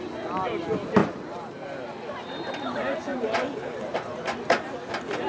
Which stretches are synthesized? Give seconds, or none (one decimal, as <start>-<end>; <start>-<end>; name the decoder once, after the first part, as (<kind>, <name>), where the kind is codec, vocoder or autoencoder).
1.0-2.6 (vocoder, BigVGAN v2); 3.1-4.7